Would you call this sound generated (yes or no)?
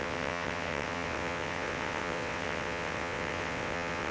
yes